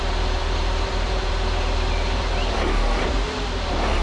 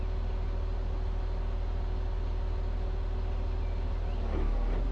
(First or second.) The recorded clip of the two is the second